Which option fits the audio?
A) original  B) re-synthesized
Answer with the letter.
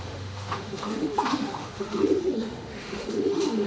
B